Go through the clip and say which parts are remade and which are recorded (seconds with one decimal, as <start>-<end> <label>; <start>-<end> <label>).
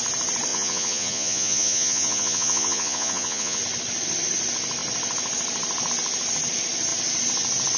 0.0-0.5 recorded; 0.5-3.6 remade; 3.6-7.8 recorded